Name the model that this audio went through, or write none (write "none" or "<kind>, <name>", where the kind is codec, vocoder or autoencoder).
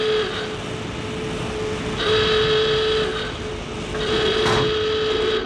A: none